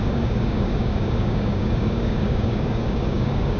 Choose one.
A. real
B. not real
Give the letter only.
B